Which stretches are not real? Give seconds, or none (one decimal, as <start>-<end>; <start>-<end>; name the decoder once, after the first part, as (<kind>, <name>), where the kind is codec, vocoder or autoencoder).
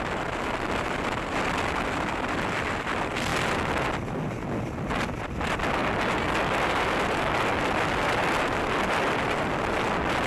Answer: none